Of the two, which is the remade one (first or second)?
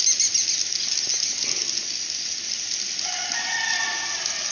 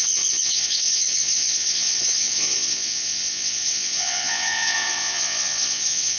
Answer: second